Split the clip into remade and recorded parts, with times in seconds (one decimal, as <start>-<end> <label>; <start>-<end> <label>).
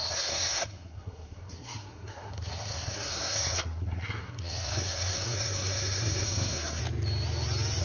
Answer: 0.0-6.8 remade; 6.8-7.8 recorded